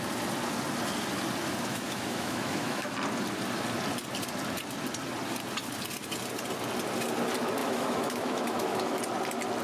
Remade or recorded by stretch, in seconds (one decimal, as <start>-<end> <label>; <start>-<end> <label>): 0.0-1.7 recorded; 1.7-2.9 remade; 2.9-7.6 recorded; 7.6-9.0 remade; 9.0-9.6 recorded

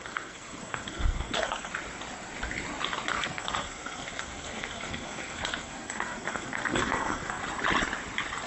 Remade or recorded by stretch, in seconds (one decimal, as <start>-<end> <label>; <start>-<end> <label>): 0.0-1.7 remade; 1.7-3.1 recorded; 3.1-7.4 remade; 7.4-8.5 recorded